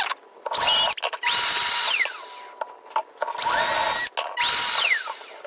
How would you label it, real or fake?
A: real